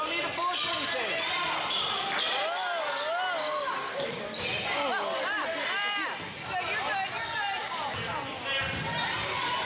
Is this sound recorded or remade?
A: recorded